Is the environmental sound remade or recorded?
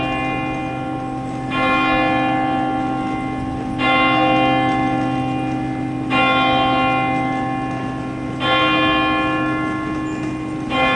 recorded